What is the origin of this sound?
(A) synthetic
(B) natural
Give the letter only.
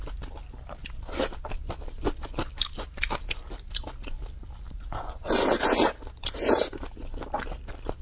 B